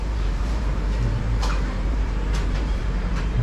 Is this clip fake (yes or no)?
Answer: yes